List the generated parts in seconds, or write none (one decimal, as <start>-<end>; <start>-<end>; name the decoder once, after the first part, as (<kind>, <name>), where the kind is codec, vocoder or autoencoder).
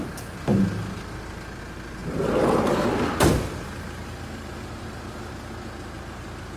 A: 2.0-5.3 (vocoder, BigVGAN v2)